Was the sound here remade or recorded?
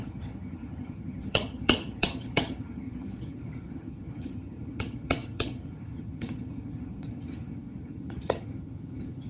remade